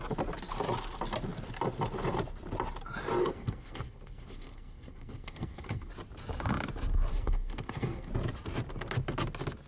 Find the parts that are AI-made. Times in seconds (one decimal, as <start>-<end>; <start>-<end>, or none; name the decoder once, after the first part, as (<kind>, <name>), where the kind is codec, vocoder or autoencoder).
3.2-5.9 (codec, SNAC); 7.1-8.1